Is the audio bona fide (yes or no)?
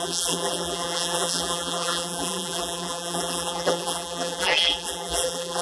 no